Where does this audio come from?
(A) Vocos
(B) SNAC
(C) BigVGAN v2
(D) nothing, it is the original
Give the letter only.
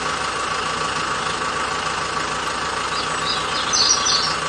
D